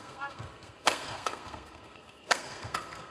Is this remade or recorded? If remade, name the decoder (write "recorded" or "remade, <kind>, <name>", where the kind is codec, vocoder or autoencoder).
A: remade, codec, SNAC